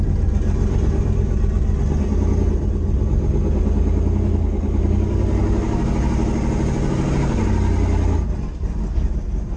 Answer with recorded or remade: recorded